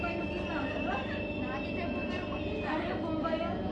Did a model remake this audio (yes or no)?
no